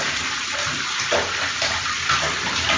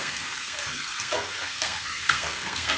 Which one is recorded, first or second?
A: first